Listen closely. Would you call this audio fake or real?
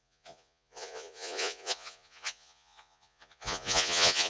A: fake